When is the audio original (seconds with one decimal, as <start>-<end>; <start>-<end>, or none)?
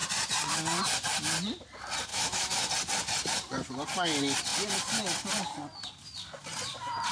0.0-2.1; 2.7-7.1